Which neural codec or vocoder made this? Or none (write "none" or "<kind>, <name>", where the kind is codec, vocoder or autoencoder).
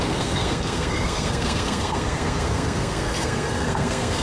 codec, SNAC